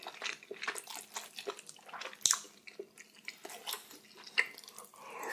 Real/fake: real